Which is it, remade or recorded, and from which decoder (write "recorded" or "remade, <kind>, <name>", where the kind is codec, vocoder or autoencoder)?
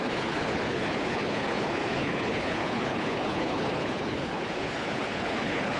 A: remade, codec, HILCodec